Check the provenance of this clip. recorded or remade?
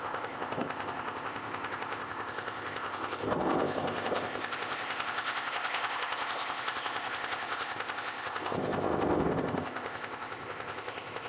remade